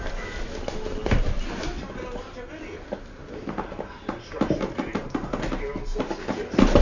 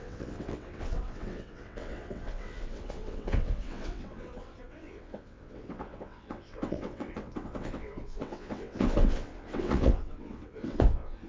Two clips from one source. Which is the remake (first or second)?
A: second